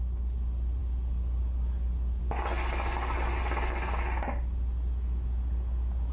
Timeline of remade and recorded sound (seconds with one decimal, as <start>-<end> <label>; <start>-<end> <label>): 0.0-6.1 recorded